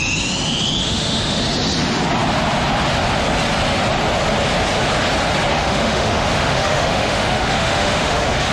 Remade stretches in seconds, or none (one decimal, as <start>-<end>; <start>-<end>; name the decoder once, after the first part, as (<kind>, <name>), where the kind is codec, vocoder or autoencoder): 0.8-1.4 (autoencoder, DAC-VAE); 5.5-8.5